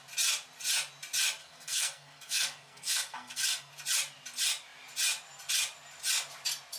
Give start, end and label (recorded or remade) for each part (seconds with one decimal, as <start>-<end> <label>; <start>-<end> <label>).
0.0-1.4 recorded; 1.4-3.7 remade; 3.7-6.8 recorded